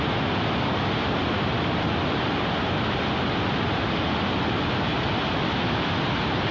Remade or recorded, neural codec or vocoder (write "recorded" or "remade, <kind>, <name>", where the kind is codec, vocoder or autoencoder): recorded